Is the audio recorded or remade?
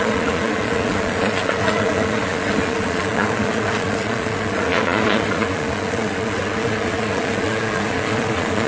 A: remade